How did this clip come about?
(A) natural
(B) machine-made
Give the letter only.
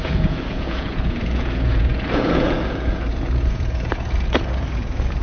B